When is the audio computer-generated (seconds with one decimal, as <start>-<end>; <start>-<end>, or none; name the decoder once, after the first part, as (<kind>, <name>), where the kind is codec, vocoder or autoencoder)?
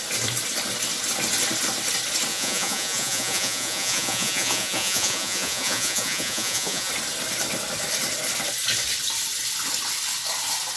2.3-6.9 (vocoder, Vocos)